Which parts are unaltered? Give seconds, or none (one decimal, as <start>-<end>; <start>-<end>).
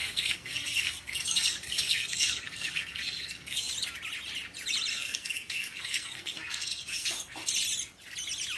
3.7-4.9; 7.5-8.6